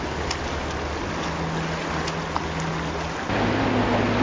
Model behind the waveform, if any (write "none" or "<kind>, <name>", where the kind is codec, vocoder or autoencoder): none